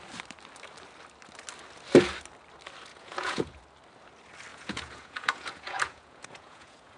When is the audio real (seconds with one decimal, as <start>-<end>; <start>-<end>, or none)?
0.0-2.9; 3.6-4.5